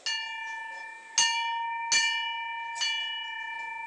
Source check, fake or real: real